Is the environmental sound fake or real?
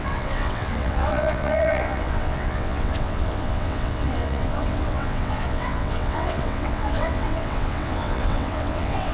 fake